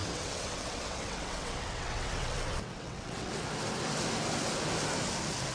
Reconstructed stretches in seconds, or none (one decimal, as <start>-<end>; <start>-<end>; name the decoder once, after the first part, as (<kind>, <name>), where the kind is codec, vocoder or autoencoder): 0.0-3.3 (vocoder, WaveNeXt)